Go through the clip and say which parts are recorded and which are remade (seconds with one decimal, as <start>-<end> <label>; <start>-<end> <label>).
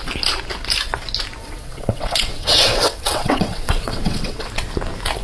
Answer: 0.0-1.4 recorded; 1.4-4.5 remade; 4.5-5.2 recorded